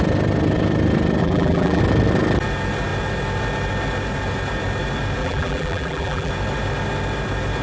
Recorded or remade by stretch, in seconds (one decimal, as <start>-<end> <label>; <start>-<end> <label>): 0.0-1.2 recorded; 1.2-1.8 remade; 1.8-5.2 recorded; 5.2-6.3 remade; 6.3-7.6 recorded